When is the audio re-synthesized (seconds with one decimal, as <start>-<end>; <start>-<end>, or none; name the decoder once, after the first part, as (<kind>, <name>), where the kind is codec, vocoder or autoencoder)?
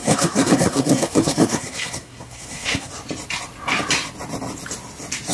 0.0-2.9 (codec, SNAC)